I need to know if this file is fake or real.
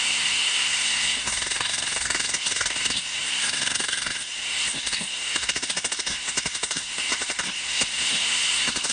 fake